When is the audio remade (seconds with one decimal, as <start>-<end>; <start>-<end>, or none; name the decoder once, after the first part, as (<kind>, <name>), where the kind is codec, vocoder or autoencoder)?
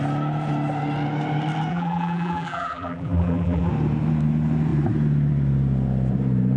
1.7-3.7 (vocoder, BigVGAN v2)